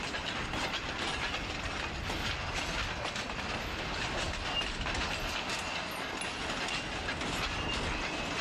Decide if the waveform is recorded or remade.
recorded